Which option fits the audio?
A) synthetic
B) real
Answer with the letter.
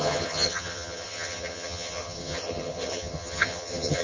A